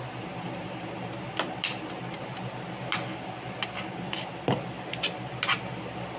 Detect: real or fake fake